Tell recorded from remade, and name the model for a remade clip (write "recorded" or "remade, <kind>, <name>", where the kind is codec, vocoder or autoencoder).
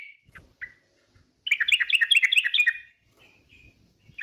recorded